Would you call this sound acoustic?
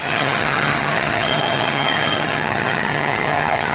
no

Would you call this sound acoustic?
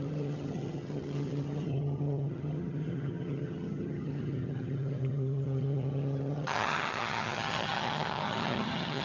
no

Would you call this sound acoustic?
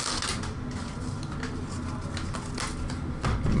yes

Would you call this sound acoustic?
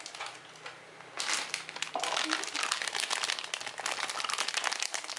yes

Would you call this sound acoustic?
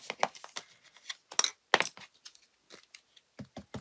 yes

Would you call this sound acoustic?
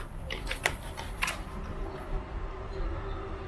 yes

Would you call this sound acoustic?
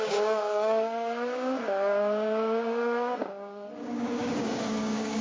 no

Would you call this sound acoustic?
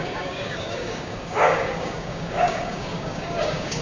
no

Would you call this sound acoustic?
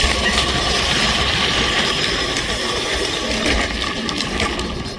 yes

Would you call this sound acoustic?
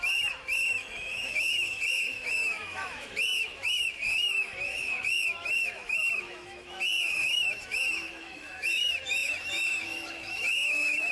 no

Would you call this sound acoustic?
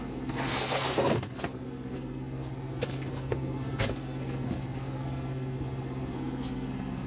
no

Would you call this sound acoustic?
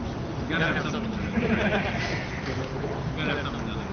yes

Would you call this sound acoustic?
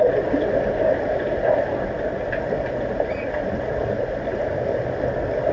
yes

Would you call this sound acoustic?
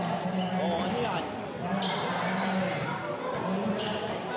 yes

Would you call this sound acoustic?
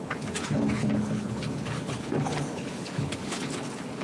no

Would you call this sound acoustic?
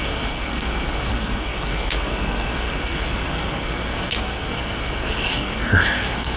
no